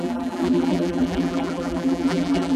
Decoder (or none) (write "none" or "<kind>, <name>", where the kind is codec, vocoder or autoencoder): vocoder, BigVGAN v2